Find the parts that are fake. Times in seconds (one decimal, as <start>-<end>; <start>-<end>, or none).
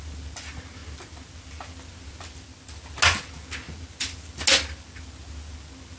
none